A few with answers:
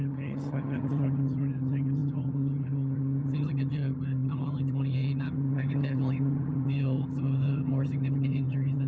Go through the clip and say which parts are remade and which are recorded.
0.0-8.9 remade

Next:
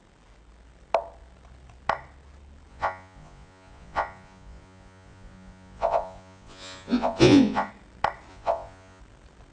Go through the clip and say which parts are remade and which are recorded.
0.0-2.7 recorded; 2.7-7.7 remade; 7.7-8.3 recorded; 8.3-9.0 remade; 9.0-9.5 recorded

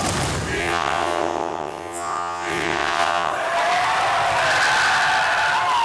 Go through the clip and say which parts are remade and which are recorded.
0.0-0.6 recorded; 0.6-3.3 remade; 3.3-5.8 recorded

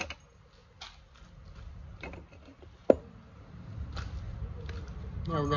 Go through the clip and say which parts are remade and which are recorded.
0.0-5.6 recorded